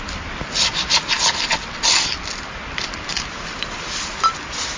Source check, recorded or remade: recorded